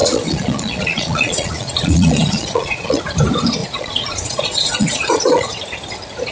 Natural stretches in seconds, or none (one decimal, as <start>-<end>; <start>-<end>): 3.0-3.6; 5.6-6.3